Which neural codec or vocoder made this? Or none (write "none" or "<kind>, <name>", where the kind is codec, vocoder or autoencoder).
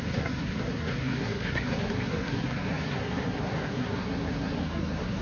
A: codec, SNAC